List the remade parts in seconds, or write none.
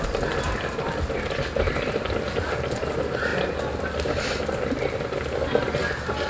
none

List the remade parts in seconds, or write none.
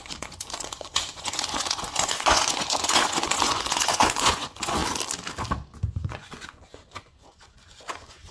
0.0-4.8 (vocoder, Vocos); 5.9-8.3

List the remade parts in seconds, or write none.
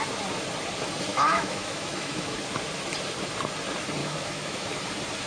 1.1-2.4 (autoencoder, DAC-VAE); 4.0-4.7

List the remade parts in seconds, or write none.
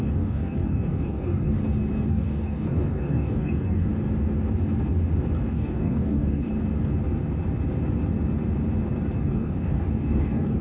0.0-1.6 (codec, DAC); 2.1-3.9; 5.5-6.5; 9.2-10.6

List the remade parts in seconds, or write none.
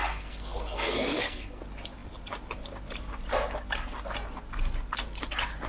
0.0-1.6 (codec, SNAC)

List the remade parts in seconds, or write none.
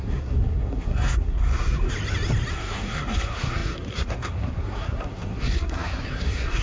0.0-1.9 (codec, SNAC); 2.5-6.6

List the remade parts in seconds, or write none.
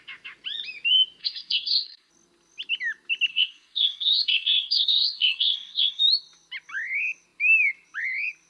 1.2-2.1 (codec, SNAC); 3.3-6.0